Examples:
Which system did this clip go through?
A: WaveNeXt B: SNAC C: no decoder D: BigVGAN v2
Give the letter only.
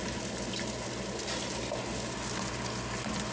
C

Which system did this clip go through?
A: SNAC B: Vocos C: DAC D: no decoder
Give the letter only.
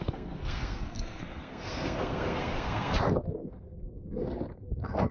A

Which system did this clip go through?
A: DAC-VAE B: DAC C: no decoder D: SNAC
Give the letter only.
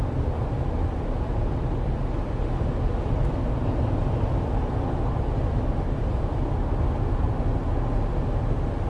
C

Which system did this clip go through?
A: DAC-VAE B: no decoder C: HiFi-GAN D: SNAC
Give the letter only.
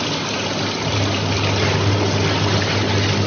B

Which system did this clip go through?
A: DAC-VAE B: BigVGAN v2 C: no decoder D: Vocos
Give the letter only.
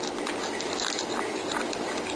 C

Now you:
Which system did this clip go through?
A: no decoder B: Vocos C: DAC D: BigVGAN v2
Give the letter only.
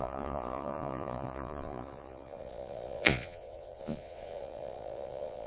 B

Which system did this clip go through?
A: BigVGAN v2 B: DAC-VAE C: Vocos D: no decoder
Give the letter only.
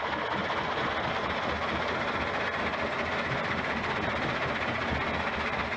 D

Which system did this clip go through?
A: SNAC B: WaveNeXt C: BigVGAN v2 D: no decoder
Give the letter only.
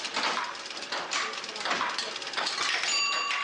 D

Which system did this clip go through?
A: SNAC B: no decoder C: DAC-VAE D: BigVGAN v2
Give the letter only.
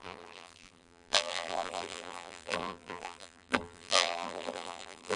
D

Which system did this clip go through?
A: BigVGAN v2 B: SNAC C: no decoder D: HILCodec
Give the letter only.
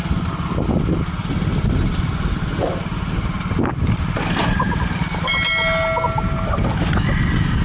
C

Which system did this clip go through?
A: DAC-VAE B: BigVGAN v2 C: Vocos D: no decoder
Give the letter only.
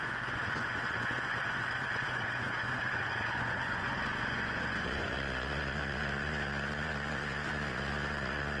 C